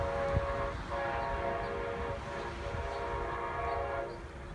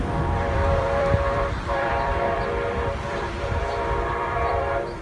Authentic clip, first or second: first